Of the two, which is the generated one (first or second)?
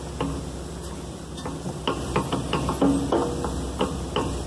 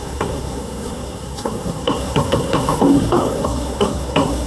second